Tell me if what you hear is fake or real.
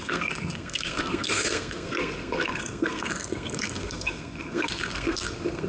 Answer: fake